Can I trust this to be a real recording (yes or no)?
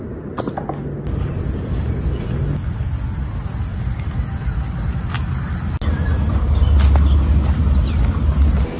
yes